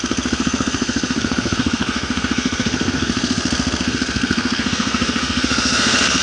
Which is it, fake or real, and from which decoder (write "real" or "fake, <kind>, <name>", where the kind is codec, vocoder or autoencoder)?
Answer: fake, codec, SNAC